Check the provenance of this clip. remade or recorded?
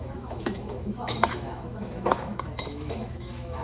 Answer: remade